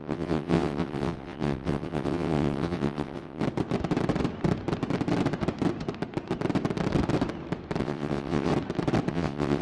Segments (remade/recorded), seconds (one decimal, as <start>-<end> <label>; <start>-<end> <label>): 0.0-3.4 remade; 3.4-7.8 recorded; 7.8-8.5 remade; 8.5-9.1 recorded; 9.1-9.6 remade